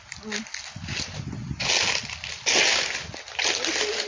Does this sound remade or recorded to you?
recorded